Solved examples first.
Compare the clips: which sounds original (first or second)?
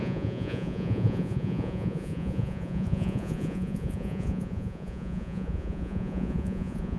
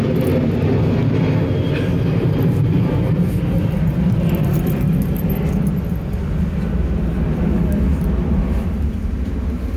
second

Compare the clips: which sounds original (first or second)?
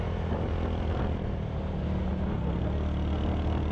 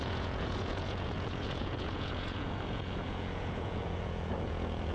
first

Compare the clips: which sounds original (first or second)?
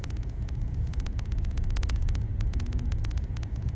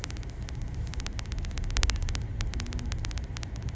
second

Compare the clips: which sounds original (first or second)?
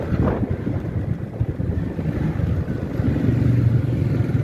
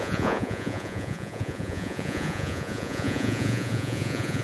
first